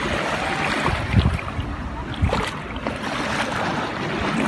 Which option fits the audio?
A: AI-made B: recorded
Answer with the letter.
B